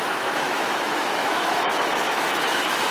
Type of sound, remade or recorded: remade